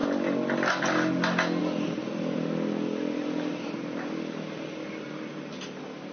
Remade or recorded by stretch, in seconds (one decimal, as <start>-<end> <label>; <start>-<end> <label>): 0.0-6.1 recorded